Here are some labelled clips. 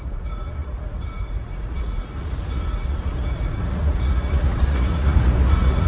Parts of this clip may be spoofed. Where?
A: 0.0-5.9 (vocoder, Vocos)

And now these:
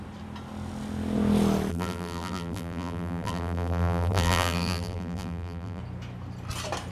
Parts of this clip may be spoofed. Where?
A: 1.7-5.8 (vocoder, BigVGAN v2)

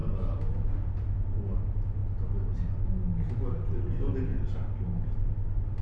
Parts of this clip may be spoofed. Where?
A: none

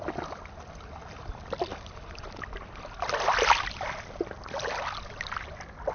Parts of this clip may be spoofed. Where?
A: none

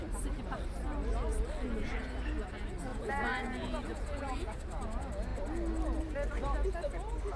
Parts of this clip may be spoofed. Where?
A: 2.9-4.6 (vocoder, Vocos)

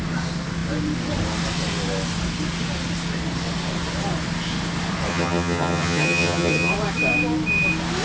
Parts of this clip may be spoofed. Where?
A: 5.1-6.7 (vocoder, HiFi-GAN)